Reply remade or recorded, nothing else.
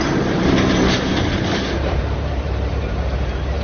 remade